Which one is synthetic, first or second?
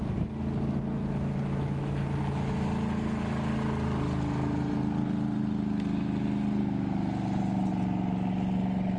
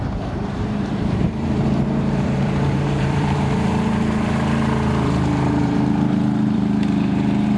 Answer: second